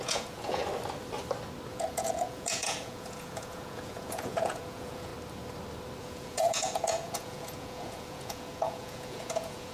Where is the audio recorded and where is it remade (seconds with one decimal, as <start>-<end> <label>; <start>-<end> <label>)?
0.0-0.6 remade; 0.6-1.7 recorded; 1.7-5.1 remade; 5.1-6.0 recorded; 6.0-9.7 remade